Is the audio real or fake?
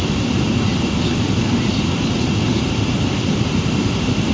real